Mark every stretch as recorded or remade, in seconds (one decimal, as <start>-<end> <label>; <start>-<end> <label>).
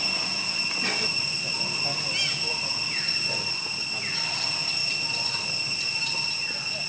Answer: 0.0-6.9 recorded